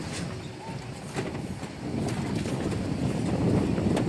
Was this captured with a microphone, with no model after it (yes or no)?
yes